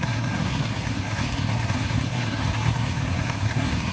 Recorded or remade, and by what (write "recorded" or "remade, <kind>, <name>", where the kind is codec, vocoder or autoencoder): remade, codec, SNAC